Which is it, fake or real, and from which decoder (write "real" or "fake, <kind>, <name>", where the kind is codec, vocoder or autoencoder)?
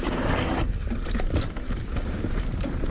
real